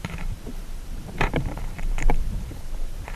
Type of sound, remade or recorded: remade